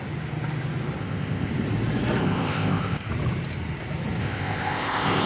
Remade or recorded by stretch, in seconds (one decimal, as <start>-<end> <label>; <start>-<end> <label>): 0.0-1.0 recorded; 1.0-1.5 remade; 1.5-2.2 recorded; 2.2-3.1 remade; 3.1-4.2 recorded; 4.2-5.3 remade